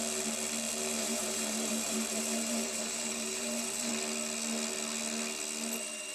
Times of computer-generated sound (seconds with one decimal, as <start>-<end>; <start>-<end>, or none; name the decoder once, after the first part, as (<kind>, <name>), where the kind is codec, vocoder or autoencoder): 1.0-3.9 (vocoder, BigVGAN v2)